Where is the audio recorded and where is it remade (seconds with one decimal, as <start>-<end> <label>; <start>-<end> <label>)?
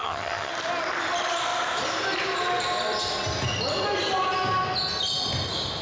0.0-0.5 remade; 0.5-5.8 recorded